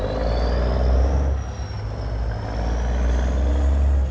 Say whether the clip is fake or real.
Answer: real